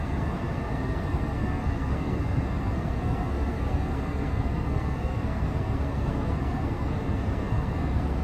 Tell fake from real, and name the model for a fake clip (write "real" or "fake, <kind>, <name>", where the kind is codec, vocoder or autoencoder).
fake, codec, SNAC